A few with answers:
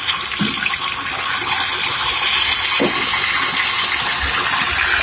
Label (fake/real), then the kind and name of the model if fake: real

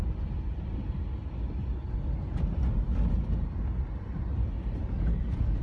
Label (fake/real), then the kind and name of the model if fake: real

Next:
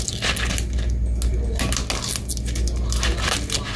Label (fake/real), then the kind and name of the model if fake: real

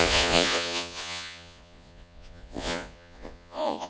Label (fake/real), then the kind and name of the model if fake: fake, vocoder, Vocos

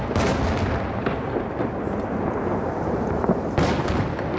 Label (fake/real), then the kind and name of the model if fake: real